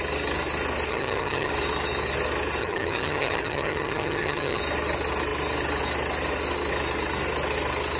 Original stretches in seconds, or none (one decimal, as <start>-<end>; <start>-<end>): 0.0-0.9; 1.5-2.6; 4.6-8.0